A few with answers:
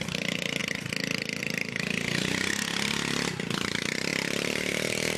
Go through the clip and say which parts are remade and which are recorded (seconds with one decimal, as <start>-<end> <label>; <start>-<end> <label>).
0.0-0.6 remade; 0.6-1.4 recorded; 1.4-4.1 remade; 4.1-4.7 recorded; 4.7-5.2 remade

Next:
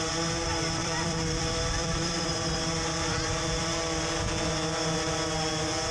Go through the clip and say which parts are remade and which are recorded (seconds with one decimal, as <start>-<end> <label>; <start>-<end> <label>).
0.0-0.8 recorded; 0.8-2.6 remade; 2.6-3.1 recorded; 3.1-3.8 remade; 3.8-5.9 recorded

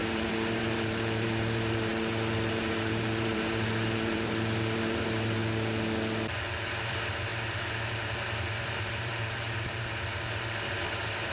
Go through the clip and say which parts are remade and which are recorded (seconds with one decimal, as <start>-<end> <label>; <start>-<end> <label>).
0.0-1.9 remade; 1.9-2.5 recorded; 2.5-5.4 remade; 5.4-6.7 recorded; 6.7-11.3 remade